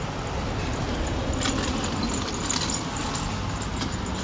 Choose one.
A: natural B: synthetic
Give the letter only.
A